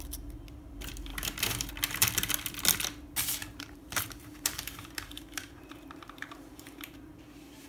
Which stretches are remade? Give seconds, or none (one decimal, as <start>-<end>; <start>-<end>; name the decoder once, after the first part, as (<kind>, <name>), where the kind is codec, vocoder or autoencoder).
1.1-1.7 (vocoder, BigVGAN v2); 3.4-7.1